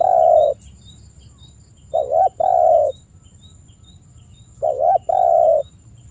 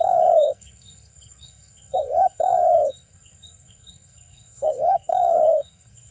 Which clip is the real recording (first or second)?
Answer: first